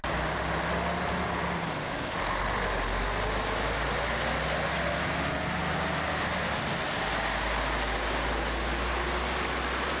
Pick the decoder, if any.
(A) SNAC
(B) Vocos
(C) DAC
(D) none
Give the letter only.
D